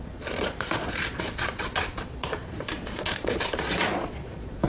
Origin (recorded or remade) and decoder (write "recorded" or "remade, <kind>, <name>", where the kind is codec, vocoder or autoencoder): remade, vocoder, Vocos